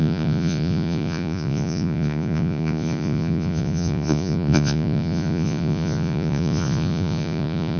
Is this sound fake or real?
fake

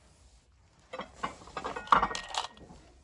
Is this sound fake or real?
real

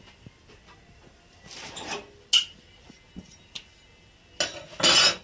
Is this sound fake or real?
real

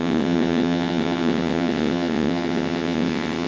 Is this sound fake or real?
fake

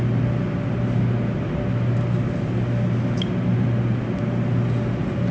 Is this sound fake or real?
real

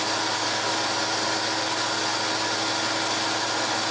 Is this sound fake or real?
real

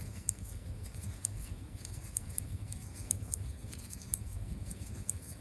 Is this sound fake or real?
fake